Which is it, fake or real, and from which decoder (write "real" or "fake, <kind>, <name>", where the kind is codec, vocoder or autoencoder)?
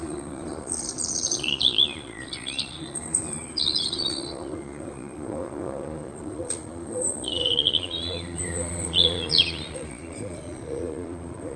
fake, vocoder, Vocos